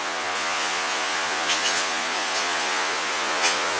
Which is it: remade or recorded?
remade